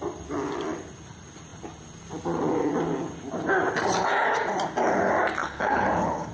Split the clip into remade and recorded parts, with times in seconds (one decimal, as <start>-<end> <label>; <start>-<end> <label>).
0.0-5.4 recorded; 5.4-6.3 remade